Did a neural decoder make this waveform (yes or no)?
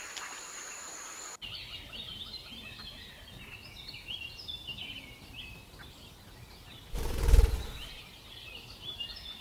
yes